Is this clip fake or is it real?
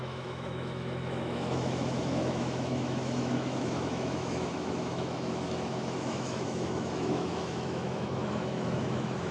fake